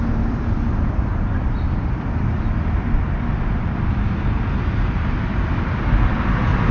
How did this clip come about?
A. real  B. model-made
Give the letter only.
A